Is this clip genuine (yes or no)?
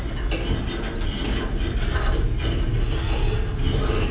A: yes